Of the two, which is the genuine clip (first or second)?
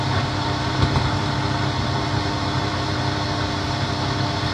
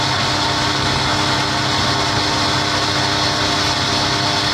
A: second